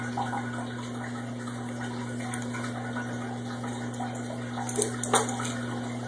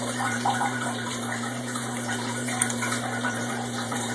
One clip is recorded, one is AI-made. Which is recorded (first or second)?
first